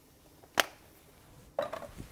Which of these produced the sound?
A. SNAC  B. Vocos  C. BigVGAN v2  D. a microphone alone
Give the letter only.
D